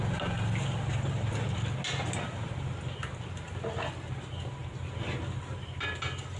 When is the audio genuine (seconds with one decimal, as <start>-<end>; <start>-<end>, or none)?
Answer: 0.0-6.4